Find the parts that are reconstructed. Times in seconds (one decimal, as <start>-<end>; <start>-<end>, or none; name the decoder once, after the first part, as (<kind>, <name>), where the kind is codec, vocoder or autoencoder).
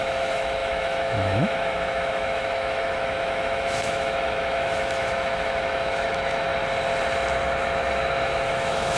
0.0-6.5 (autoencoder, DAC-VAE); 7.6-9.0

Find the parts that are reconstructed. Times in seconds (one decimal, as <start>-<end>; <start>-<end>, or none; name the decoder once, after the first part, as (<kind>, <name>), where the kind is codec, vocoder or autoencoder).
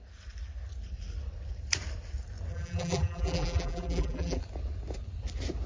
2.5-4.4 (vocoder, BigVGAN v2)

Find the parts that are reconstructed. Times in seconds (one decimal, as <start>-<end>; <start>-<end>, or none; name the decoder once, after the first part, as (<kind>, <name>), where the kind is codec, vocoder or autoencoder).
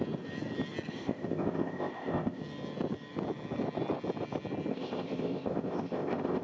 0.9-2.4 (codec, ZipCodec); 4.7-6.4